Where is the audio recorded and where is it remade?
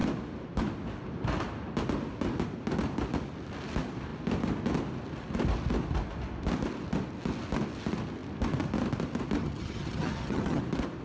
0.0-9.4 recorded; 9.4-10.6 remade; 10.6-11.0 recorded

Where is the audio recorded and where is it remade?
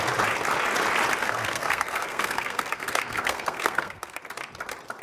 0.0-1.2 recorded; 1.2-4.2 remade; 4.2-5.0 recorded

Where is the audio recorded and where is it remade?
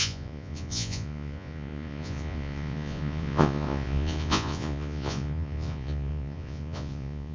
0.0-7.3 remade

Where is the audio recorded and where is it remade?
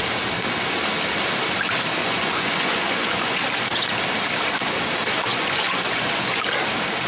0.0-2.0 recorded; 2.0-3.4 remade; 3.4-5.3 recorded; 5.3-6.4 remade; 6.4-7.1 recorded